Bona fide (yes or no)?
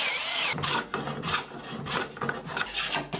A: yes